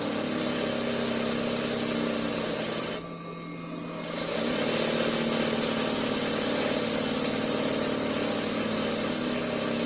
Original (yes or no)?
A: yes